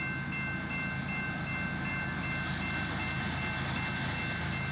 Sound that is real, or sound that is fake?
real